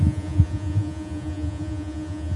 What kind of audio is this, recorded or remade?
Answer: remade